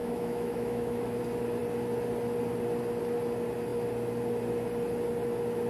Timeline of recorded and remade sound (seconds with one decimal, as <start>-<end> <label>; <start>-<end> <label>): 0.0-1.2 remade; 1.2-5.7 recorded